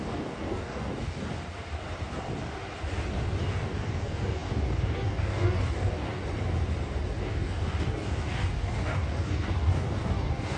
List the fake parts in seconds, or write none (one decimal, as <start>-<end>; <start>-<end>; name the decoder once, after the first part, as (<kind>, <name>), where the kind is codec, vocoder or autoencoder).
0.0-1.2 (codec, DAC); 3.4-6.2; 7.2-10.6